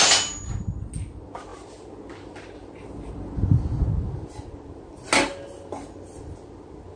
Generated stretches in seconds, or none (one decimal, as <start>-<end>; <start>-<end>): none